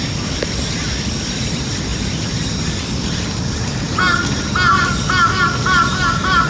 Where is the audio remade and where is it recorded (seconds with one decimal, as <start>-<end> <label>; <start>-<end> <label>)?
0.0-6.5 recorded